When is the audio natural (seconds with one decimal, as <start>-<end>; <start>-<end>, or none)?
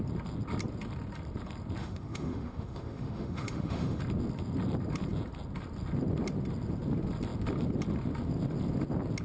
0.0-1.8; 4.0-9.2